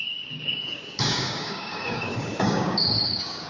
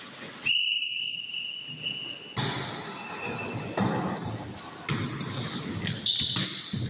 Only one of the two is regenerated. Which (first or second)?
first